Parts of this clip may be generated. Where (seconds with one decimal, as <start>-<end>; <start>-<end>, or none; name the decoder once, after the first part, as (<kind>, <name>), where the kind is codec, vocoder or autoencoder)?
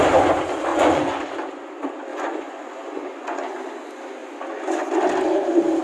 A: 0.7-1.2 (vocoder, Vocos); 2.1-3.6; 4.2-4.9